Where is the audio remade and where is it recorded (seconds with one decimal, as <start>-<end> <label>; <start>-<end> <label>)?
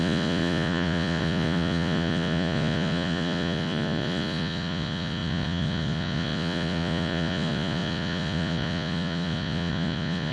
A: 0.0-10.3 remade